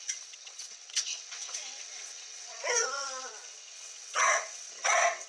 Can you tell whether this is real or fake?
fake